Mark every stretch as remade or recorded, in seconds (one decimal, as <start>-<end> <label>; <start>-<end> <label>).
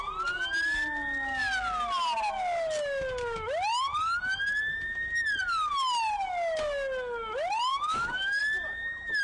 0.0-7.7 recorded; 7.7-8.4 remade; 8.4-9.2 recorded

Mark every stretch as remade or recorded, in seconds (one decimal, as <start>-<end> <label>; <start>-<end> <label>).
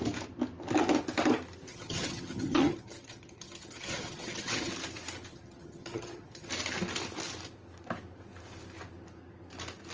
0.0-1.7 recorded; 1.7-4.7 remade; 4.7-5.3 recorded; 5.3-6.5 remade; 6.5-9.9 recorded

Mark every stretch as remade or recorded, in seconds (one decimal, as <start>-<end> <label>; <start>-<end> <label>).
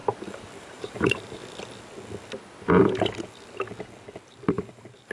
0.0-0.6 recorded; 0.6-1.4 remade; 1.4-4.5 recorded; 4.5-5.1 remade